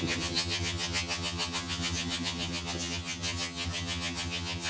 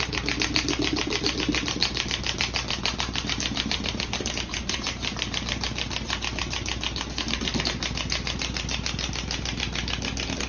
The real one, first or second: second